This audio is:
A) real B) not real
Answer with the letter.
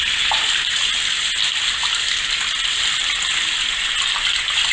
A